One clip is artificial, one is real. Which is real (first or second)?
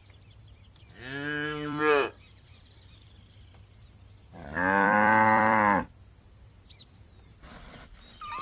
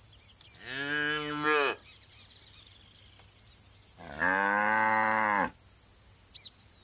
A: second